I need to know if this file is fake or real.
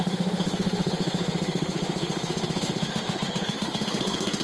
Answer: fake